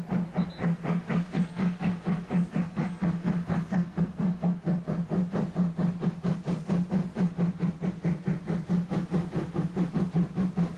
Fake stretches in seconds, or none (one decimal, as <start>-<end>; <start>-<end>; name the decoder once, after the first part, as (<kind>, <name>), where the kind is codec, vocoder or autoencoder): 0.6-4.8 (codec, SNAC)